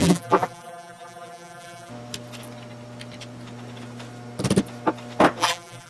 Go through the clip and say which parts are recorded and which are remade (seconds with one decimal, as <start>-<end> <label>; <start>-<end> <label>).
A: 0.0-1.9 remade; 1.9-5.4 recorded; 5.4-5.9 remade